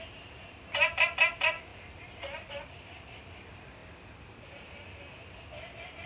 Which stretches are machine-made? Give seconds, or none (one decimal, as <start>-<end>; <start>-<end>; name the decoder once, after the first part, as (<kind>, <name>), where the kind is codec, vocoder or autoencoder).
none